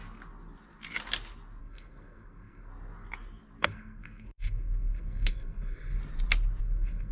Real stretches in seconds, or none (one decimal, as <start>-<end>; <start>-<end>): 0.0-1.6; 2.7-3.6; 6.0-6.6